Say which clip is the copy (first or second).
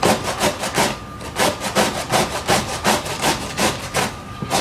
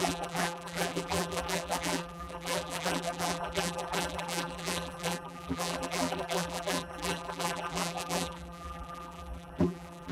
second